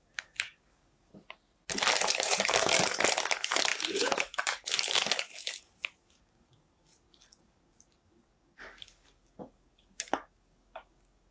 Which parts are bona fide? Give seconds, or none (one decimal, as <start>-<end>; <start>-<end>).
1.1-1.8